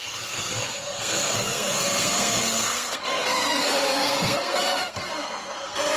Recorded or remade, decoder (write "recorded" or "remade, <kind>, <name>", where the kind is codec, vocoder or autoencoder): remade, codec, SNAC